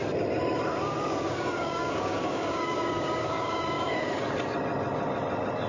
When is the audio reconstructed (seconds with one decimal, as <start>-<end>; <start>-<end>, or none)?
0.7-4.1